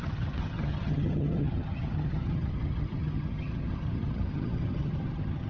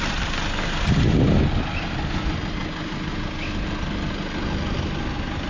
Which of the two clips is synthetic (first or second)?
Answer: first